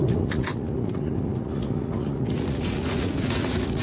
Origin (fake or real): fake